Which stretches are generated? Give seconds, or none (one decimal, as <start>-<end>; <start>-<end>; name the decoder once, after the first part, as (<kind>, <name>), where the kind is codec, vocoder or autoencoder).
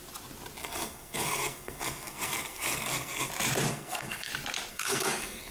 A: 0.6-3.3 (codec, SNAC); 3.7-4.3; 4.7-5.5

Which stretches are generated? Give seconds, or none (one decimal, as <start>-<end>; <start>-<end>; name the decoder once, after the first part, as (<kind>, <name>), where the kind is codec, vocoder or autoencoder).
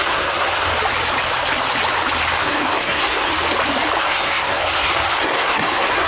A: 0.0-0.7 (codec, SNAC); 2.4-3.3; 4.0-6.1